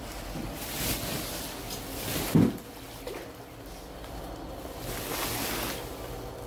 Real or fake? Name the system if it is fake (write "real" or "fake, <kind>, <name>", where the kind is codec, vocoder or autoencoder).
real